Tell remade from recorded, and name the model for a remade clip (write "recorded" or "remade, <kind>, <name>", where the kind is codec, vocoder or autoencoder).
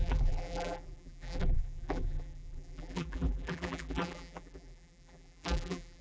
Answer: remade, vocoder, BigVGAN v2